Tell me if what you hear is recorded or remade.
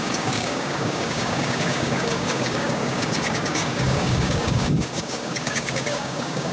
remade